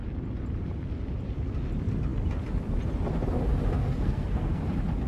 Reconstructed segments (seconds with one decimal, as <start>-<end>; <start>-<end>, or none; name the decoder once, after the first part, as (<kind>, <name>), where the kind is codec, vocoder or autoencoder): 3.8-4.6 (codec, SNAC)